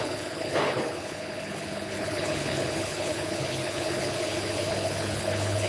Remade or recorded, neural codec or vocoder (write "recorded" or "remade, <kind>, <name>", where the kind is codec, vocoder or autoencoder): remade, codec, HILCodec